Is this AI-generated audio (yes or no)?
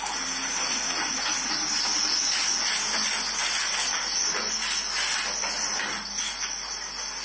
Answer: no